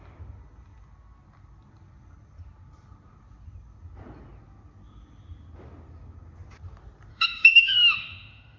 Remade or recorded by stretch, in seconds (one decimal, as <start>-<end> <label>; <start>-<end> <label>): 0.0-7.1 recorded; 7.1-8.6 remade

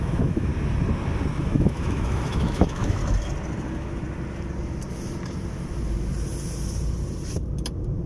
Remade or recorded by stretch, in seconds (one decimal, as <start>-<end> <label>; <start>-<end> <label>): 0.0-0.5 remade; 0.5-1.4 recorded; 1.4-3.0 remade; 3.0-8.1 recorded

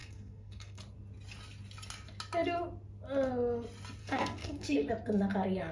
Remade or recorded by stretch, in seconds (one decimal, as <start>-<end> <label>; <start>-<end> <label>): 0.0-0.8 remade; 0.8-4.0 recorded; 4.0-4.9 remade; 4.9-5.7 recorded

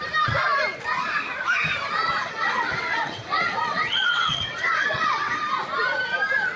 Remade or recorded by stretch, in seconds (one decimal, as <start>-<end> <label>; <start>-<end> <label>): 0.0-2.2 recorded; 2.2-5.4 remade; 5.4-6.6 recorded

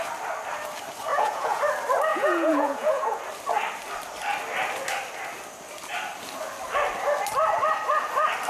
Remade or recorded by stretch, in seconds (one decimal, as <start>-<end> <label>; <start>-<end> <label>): 0.0-1.1 recorded; 1.1-1.6 remade; 1.6-2.1 recorded; 2.1-3.2 remade; 3.2-8.5 recorded

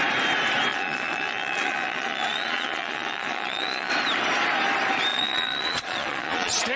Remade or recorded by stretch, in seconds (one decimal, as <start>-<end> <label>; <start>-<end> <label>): 0.0-0.7 recorded; 0.7-3.9 remade; 3.9-5.1 recorded; 5.1-6.8 remade

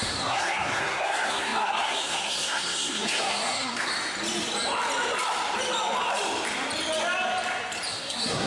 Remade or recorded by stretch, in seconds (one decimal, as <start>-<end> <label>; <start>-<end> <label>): 0.0-3.9 remade; 3.9-7.9 recorded; 7.9-8.5 remade